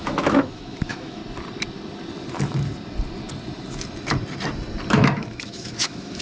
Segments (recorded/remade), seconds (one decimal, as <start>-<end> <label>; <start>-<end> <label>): 0.0-1.2 remade; 1.2-4.9 recorded; 4.9-6.2 remade

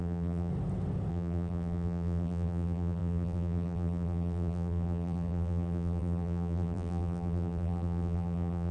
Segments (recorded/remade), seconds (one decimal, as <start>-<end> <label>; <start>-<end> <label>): 0.0-0.5 remade; 0.5-1.1 recorded; 1.1-8.7 remade

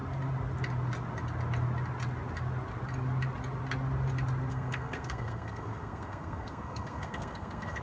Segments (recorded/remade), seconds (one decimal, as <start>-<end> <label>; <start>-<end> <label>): 0.0-4.5 recorded; 4.5-7.8 remade

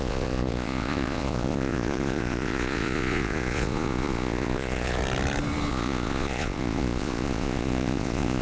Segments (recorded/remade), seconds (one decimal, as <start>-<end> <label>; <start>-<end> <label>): 0.0-5.0 remade; 5.0-5.7 recorded; 5.7-8.4 remade

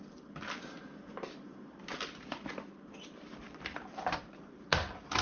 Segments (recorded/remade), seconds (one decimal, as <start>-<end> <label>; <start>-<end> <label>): 0.0-1.5 recorded; 1.5-4.6 remade; 4.6-5.2 recorded

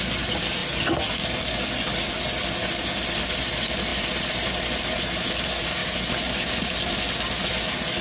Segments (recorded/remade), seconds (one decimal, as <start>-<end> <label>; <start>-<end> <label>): 0.0-8.0 recorded

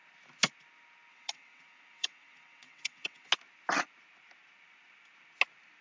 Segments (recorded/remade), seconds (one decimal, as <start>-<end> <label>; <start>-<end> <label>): 0.0-1.1 recorded; 1.1-3.3 remade; 3.3-5.8 recorded